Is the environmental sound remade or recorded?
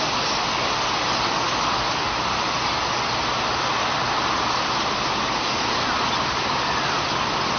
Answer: recorded